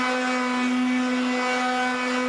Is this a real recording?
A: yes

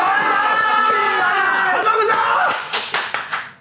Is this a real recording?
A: no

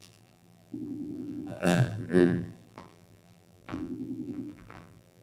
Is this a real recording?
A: no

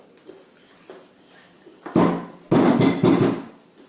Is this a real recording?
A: yes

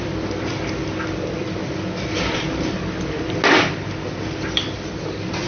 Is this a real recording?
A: yes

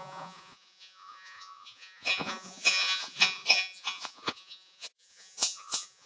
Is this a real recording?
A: no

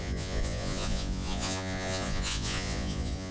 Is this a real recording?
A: no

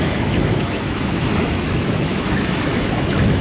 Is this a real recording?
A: no